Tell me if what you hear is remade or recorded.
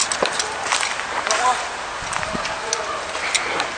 recorded